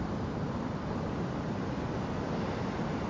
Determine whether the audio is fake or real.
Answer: real